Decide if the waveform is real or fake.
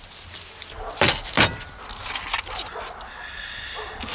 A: real